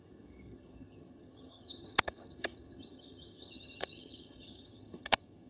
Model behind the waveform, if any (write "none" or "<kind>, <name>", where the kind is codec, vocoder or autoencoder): vocoder, HiFi-GAN